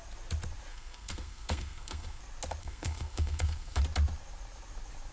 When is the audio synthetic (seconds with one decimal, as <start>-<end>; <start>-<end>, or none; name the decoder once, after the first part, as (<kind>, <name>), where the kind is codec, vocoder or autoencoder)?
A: 0.7-2.2 (codec, SNAC); 2.6-3.8

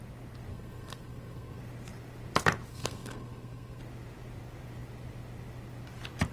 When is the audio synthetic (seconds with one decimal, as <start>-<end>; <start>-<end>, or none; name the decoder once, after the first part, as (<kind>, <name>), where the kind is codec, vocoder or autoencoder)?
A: 0.5-1.6 (codec, SNAC); 2.7-3.8

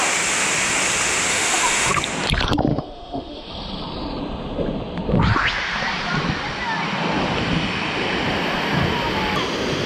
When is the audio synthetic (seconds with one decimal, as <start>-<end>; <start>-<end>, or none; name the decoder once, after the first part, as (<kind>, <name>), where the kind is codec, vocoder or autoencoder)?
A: 1.3-1.9 (autoencoder, DAC-VAE); 2.7-3.5